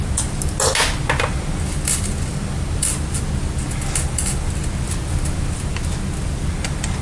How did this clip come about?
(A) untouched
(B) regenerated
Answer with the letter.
A